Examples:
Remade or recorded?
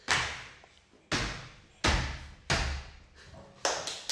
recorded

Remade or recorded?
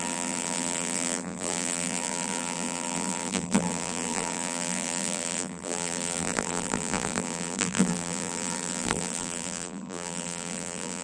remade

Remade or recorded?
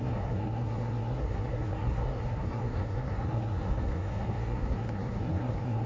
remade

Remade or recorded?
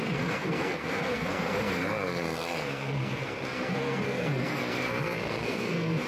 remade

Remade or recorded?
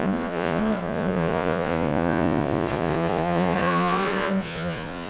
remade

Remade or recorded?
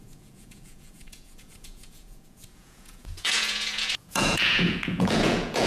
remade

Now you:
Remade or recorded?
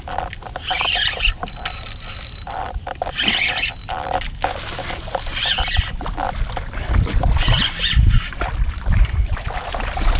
recorded